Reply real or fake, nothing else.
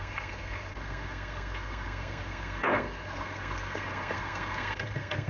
fake